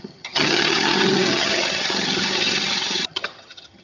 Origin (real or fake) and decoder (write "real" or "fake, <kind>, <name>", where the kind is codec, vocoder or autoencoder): fake, vocoder, HiFi-GAN